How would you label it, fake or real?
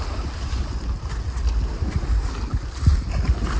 real